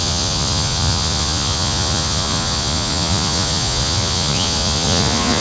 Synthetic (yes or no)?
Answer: yes